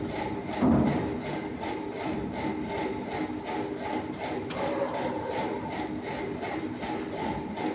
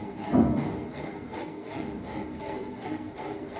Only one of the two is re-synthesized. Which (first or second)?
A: second